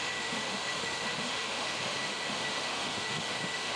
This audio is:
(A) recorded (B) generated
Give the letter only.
B